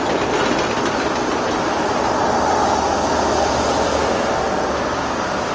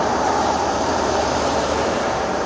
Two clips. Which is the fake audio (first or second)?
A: second